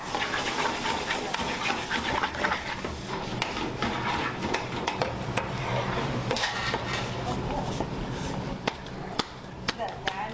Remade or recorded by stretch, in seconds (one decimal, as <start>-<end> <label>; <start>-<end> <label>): 0.0-6.0 recorded; 6.0-6.5 remade; 6.5-10.3 recorded